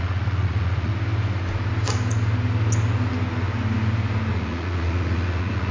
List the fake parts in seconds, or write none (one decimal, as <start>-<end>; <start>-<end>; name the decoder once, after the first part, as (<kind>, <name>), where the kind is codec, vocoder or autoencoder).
0.0-0.9 (vocoder, Vocos); 4.3-5.7